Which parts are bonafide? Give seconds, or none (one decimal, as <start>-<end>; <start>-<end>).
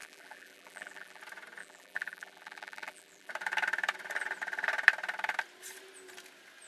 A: 1.2-1.6; 3.3-6.7